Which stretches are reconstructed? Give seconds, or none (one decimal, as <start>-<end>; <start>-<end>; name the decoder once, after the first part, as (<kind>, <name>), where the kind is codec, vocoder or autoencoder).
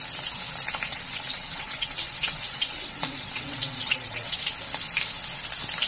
0.9-4.4 (vocoder, WaveNeXt)